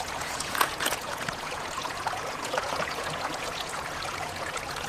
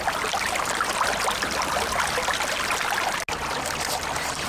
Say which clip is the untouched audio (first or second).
second